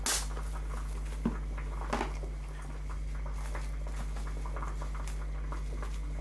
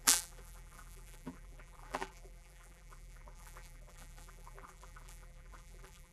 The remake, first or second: second